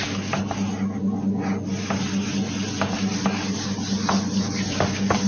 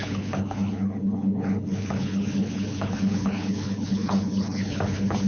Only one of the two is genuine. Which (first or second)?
first